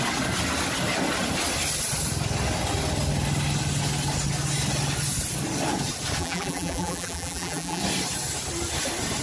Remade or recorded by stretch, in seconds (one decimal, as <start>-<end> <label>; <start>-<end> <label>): 0.0-6.2 recorded; 6.2-7.8 remade; 7.8-9.2 recorded